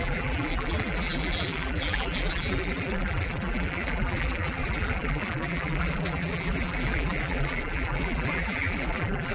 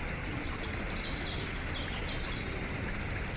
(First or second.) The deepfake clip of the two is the first